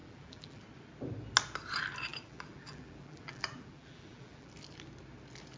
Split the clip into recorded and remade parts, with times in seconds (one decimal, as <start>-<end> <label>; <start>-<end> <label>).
0.0-0.6 remade; 0.6-2.1 recorded; 2.1-4.5 remade; 4.5-5.6 recorded